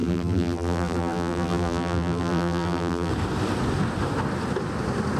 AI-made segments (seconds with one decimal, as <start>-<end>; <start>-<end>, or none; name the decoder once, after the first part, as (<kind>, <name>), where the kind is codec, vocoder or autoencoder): 0.0-3.1 (vocoder, BigVGAN v2)